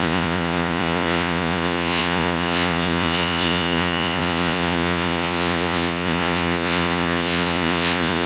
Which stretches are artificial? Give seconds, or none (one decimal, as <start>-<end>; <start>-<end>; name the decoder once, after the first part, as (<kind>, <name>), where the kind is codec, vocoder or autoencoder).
0.0-8.3 (vocoder, Vocos)